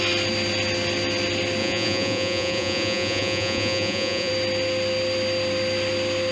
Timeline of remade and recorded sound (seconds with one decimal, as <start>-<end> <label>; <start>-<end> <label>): 0.0-1.6 recorded; 1.6-4.3 remade; 4.3-6.3 recorded